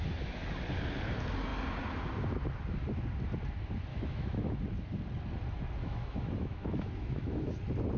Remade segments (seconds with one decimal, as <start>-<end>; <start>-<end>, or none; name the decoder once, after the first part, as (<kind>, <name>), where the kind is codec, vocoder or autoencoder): 3.9-4.6 (autoencoder, DAC-VAE); 5.8-7.5